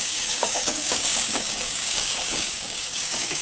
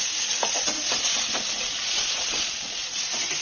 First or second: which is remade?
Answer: first